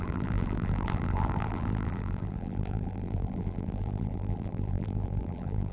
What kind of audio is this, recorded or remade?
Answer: remade